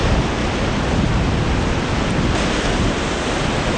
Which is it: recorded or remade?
recorded